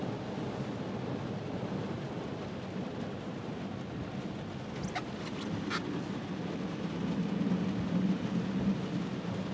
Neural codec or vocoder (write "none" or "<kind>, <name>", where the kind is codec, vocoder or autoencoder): none